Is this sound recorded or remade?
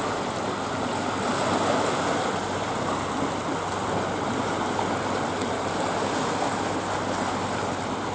recorded